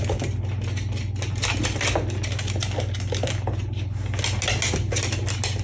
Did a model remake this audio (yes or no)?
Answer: no